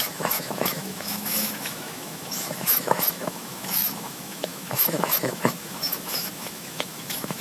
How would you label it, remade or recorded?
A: remade